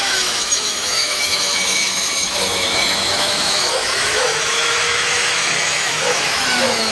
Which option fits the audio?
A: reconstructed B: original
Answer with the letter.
A